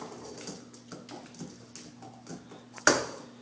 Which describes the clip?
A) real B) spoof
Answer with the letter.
A